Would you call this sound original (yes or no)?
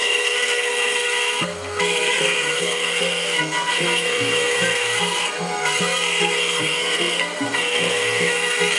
no